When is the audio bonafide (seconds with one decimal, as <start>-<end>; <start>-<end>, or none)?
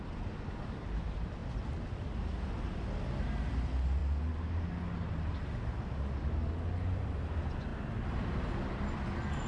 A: 0.0-9.5